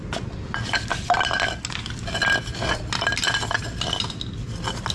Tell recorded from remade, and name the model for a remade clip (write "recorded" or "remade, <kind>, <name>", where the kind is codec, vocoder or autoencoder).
recorded